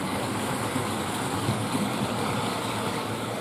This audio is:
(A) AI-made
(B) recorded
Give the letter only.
A